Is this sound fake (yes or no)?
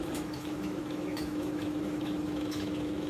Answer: yes